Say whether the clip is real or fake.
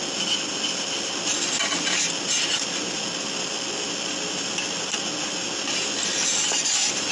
real